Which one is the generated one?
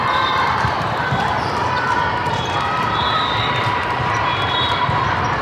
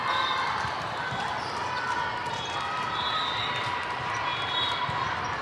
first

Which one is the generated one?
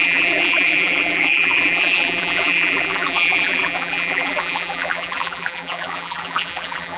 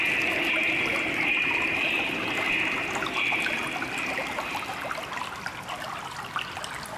first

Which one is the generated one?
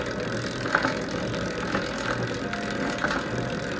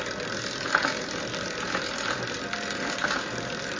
second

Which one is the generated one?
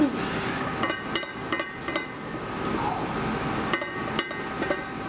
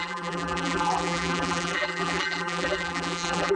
second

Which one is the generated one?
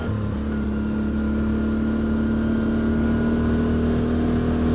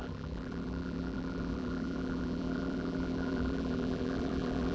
second